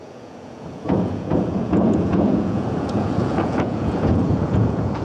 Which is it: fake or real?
fake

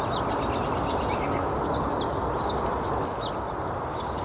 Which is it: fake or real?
real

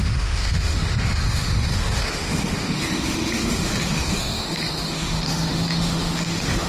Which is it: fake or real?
fake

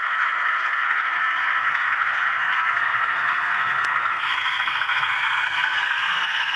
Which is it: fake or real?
fake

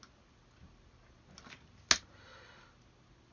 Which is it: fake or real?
real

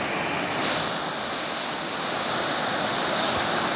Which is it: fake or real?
real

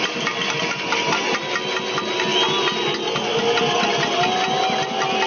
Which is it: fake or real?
real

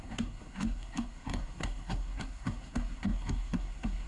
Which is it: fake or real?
fake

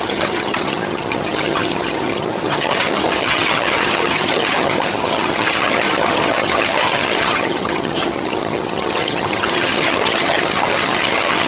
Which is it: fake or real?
fake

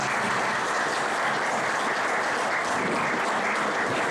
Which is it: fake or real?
real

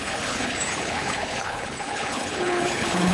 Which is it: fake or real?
fake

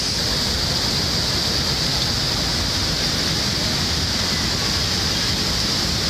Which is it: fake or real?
real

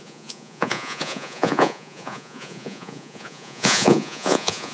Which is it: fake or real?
fake